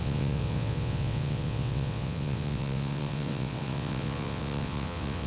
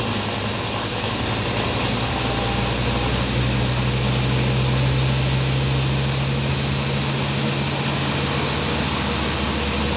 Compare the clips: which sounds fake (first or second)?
first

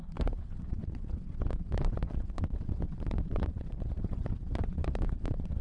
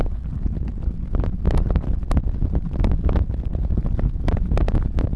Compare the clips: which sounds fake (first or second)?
first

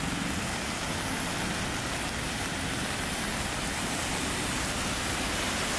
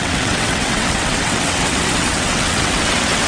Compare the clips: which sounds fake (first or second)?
second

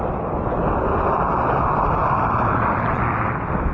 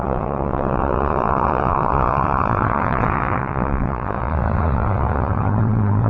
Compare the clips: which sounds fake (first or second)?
second